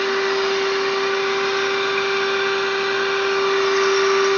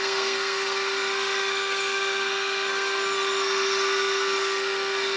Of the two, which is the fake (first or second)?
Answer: second